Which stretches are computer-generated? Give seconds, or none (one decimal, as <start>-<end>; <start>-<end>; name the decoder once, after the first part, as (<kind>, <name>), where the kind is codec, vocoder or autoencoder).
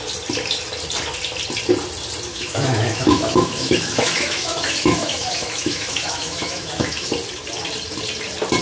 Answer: 2.3-7.1 (autoencoder, DAC-VAE)